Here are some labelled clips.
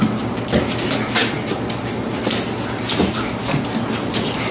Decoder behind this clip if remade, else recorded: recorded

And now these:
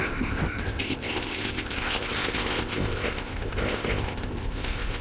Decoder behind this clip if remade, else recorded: remade, codec, ZipCodec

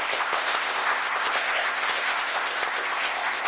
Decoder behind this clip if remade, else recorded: remade, codec, ZipCodec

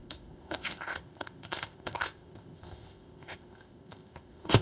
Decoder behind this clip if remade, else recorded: remade, codec, ZipCodec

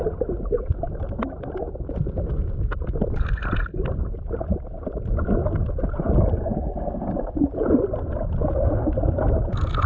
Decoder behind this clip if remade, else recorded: recorded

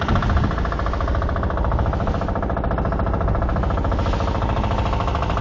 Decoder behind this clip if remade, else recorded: recorded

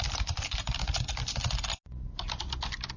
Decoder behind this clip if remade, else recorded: recorded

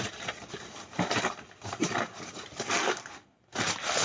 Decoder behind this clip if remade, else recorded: recorded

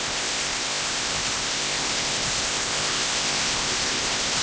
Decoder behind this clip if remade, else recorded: remade, codec, ZipCodec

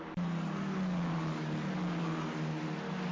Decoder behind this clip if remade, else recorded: recorded